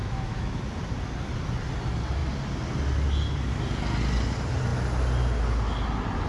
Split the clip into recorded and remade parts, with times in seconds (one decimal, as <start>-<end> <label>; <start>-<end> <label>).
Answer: 0.0-0.6 remade; 0.6-6.3 recorded